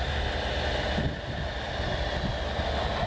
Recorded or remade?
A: recorded